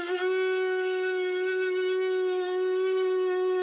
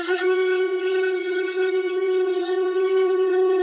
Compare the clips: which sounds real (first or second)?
first